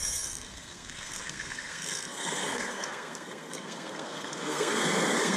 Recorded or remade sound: remade